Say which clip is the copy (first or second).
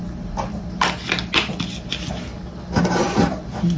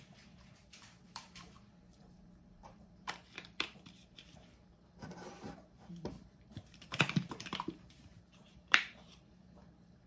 second